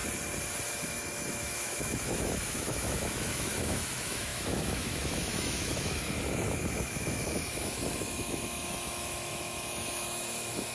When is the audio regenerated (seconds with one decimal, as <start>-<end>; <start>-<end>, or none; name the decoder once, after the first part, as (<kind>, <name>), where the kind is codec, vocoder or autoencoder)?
0.7-10.7 (autoencoder, DAC-VAE)